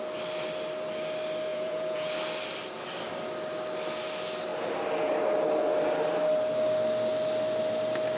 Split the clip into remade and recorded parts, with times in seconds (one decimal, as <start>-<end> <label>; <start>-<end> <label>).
0.0-1.5 recorded; 1.5-2.1 remade; 2.1-8.2 recorded